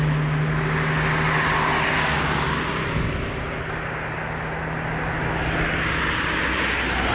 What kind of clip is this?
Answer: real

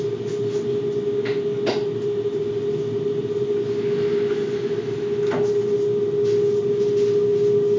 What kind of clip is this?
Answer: real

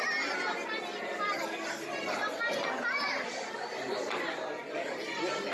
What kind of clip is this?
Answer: real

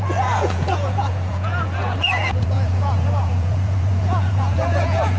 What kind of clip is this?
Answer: fake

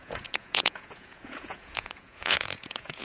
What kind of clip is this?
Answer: fake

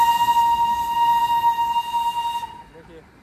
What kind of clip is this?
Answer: real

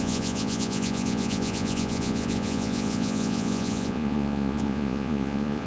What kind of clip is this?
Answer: fake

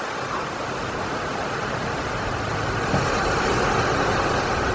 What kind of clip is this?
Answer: real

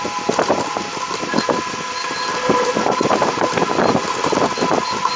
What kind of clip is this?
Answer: real